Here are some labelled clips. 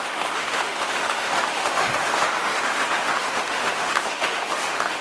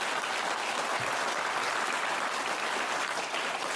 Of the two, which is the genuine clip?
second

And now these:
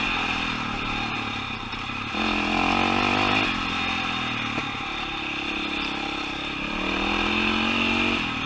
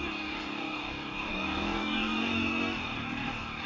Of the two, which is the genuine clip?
first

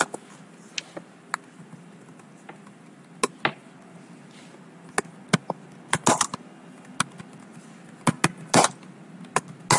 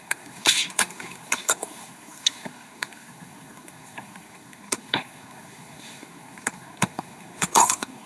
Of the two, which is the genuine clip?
first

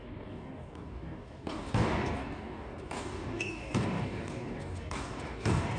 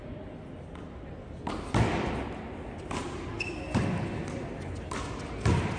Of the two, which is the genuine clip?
second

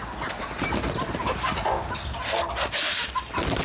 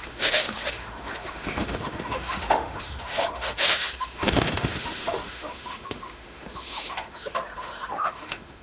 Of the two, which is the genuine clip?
first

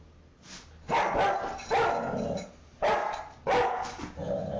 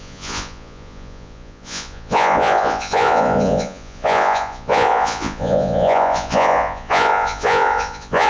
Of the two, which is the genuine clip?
first